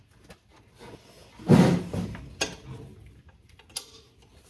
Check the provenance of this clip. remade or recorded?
recorded